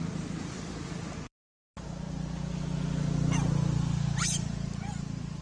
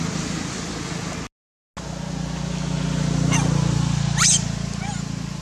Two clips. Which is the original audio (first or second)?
second